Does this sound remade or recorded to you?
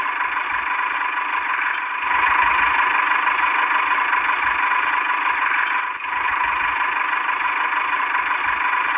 recorded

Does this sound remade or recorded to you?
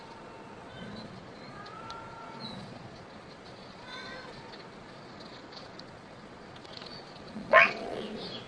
remade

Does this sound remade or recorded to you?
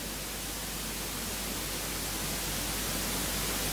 recorded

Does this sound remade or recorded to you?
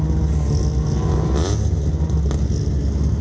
recorded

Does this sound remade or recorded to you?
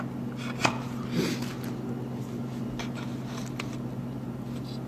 recorded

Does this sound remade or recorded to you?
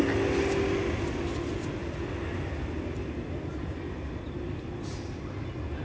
recorded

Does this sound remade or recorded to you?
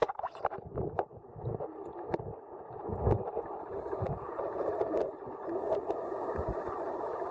remade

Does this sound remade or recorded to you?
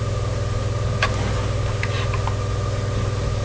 recorded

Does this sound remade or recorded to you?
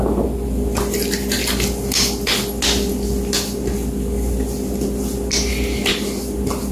recorded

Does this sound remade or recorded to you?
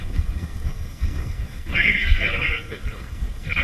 remade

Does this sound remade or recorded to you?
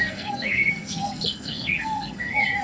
remade